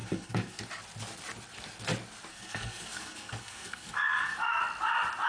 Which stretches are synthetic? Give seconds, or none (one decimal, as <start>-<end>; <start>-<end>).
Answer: 0.0-0.6; 2.3-4.6